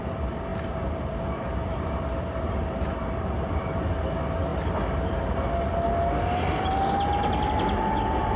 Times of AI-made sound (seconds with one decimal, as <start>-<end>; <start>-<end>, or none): none